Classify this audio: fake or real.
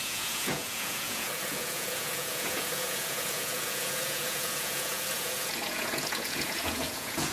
fake